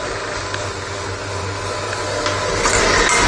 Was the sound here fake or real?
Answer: real